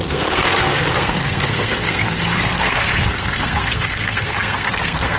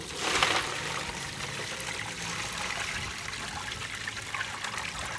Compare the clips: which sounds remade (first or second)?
first